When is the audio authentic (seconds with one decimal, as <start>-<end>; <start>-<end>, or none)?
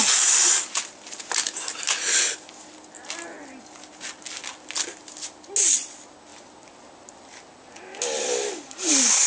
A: 0.0-9.3